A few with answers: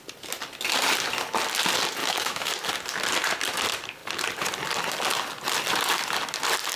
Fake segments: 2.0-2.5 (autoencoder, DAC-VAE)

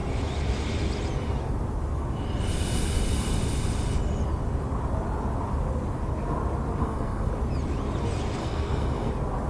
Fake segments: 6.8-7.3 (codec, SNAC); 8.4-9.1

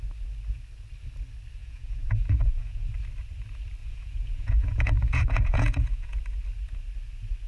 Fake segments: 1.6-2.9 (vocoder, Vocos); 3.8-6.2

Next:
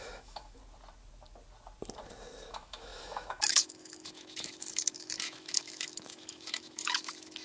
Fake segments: 0.0-0.6 (autoencoder, DAC-VAE); 2.5-7.4

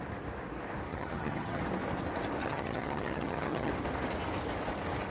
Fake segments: 0.9-1.6 (vocoder, HiFi-GAN); 2.4-3.7

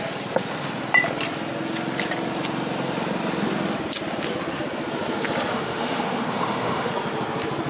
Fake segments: 5.5-6.9 (autoencoder, DAC-VAE)

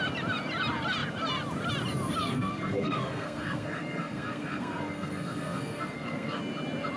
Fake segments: 2.2-6.4 (codec, SNAC)

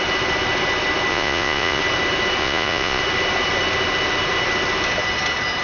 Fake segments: 1.1-1.8 (vocoder, Vocos); 2.4-3.0